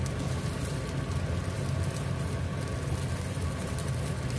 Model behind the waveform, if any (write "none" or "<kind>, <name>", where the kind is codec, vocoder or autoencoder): none